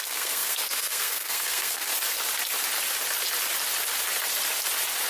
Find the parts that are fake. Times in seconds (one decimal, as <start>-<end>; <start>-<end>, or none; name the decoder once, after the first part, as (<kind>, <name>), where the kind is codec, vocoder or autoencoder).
0.0-1.9 (codec, SNAC)